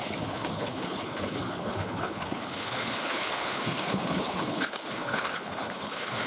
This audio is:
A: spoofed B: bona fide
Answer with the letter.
A